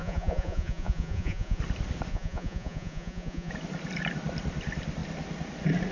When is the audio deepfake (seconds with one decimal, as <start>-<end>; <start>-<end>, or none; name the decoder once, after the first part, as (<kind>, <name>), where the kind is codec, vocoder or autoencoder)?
0.0-1.6 (vocoder, Vocos); 2.1-3.5